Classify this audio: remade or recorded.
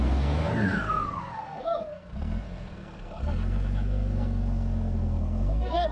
remade